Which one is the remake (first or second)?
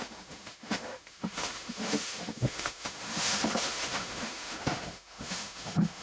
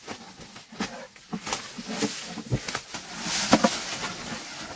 first